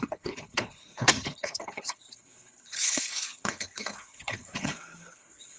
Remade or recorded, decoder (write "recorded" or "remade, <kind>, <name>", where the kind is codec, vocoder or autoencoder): remade, codec, HILCodec